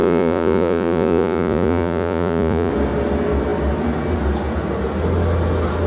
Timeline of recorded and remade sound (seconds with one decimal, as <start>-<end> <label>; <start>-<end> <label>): 0.0-2.7 remade; 2.7-5.9 recorded